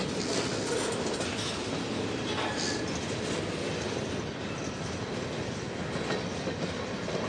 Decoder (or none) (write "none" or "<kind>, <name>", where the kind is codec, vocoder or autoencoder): none